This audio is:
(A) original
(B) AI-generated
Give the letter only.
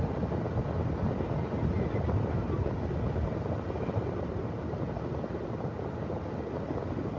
A